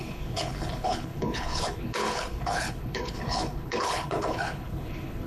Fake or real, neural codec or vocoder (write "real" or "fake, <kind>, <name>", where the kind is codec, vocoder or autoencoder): fake, codec, HILCodec